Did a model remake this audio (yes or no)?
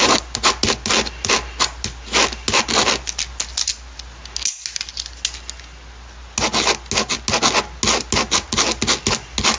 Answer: no